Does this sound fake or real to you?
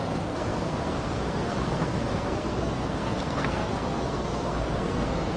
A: fake